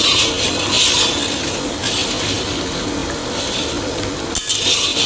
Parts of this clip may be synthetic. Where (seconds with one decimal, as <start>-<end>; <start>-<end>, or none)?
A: none